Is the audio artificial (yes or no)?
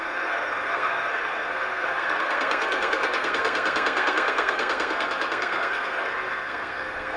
yes